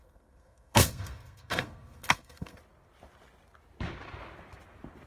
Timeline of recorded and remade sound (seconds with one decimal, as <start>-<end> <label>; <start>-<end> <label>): 0.0-2.6 remade; 2.6-5.1 recorded